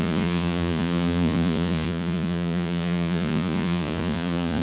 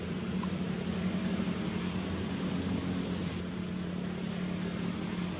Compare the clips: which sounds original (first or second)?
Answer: second